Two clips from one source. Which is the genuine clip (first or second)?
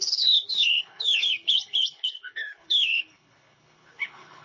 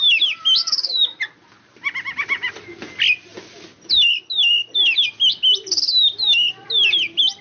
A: second